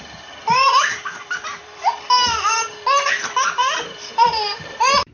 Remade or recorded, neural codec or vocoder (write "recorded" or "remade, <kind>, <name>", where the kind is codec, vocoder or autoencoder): remade, vocoder, BigVGAN v2